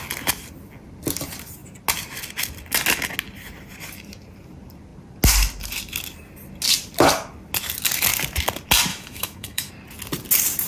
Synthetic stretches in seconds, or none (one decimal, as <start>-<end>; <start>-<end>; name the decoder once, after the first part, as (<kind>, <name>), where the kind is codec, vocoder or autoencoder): 8.9-9.7 (autoencoder, DAC-VAE)